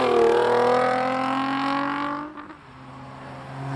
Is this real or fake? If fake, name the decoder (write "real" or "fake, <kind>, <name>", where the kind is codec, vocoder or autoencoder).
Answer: real